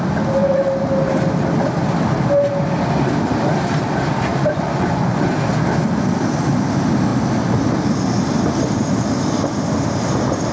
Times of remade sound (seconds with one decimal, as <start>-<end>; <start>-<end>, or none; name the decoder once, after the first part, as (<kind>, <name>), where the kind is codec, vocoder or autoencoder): 4.3-5.3 (vocoder, Vocos)